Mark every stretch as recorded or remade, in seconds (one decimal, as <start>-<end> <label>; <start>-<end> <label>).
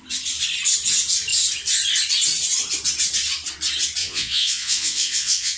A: 0.0-4.0 recorded; 4.0-5.6 remade